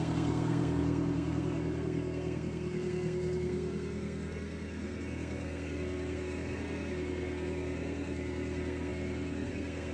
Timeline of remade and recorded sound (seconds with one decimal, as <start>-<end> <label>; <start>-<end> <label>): 0.0-9.9 remade